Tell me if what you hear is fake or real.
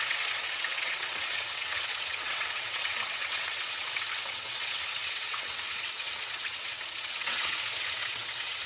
fake